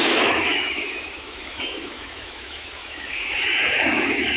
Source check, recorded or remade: remade